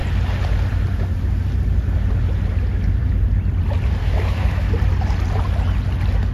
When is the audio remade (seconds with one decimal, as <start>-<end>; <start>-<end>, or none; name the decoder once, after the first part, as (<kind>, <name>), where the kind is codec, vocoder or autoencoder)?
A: 4.0-4.7 (autoencoder, DAC-VAE)